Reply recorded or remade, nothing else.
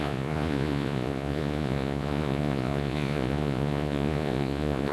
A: remade